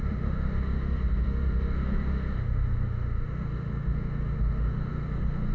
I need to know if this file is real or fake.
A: fake